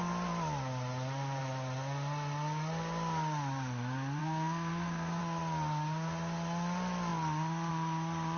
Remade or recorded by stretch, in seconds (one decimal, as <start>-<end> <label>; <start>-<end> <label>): 0.0-4.2 recorded; 4.2-5.2 remade; 5.2-8.4 recorded